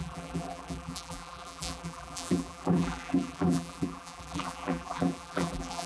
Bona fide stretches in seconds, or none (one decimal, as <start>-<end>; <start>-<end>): none